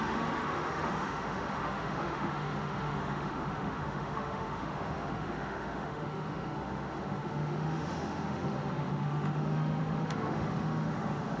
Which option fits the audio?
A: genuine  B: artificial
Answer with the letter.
B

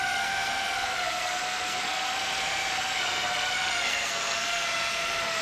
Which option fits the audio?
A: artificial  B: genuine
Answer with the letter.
A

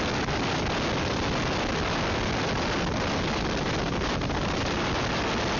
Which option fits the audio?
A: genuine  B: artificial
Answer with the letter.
A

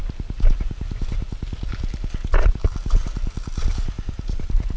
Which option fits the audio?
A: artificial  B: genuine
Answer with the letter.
B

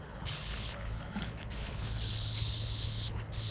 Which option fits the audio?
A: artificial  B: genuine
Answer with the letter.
A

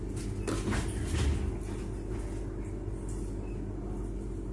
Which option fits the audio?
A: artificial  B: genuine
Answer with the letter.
B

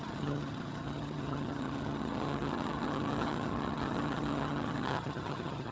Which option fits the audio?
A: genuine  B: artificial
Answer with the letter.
B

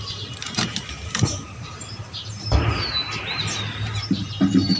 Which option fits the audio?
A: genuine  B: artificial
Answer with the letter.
B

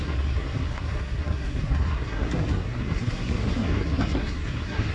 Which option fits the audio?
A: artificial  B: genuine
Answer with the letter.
A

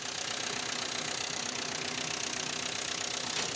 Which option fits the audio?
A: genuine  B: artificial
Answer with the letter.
A